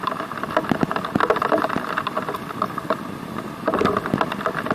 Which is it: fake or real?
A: real